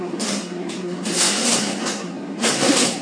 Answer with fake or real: fake